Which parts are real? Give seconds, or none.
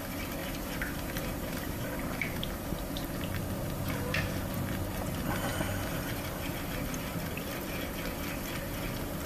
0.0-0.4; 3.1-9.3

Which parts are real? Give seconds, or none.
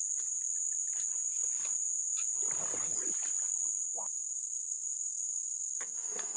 0.0-4.1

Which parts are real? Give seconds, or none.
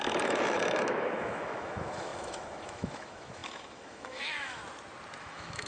4.6-5.2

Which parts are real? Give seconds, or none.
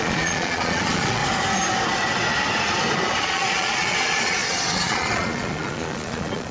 1.2-3.2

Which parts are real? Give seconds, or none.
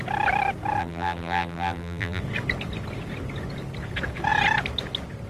0.0-0.8; 2.2-5.3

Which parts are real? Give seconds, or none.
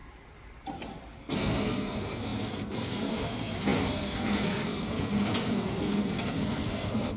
0.0-1.2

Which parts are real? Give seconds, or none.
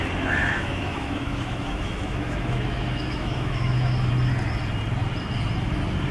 0.0-0.4; 4.1-6.1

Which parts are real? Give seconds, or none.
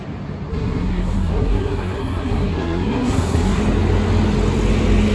0.0-0.5; 3.6-5.1